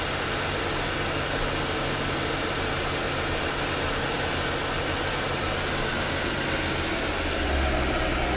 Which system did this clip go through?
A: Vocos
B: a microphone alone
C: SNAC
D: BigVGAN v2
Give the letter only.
B